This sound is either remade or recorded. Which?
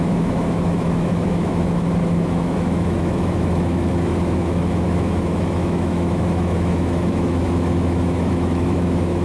remade